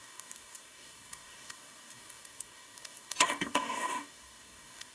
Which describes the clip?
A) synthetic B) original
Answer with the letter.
A